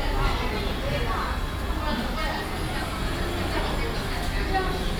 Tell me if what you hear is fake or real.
real